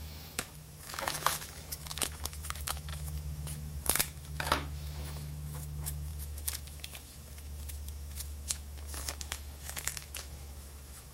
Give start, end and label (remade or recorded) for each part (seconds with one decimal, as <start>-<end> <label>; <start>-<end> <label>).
0.0-11.1 remade